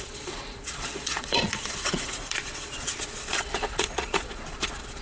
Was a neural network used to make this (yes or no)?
yes